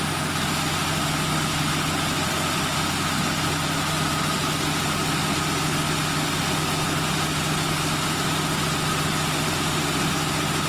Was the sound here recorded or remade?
recorded